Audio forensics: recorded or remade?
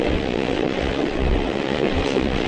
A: remade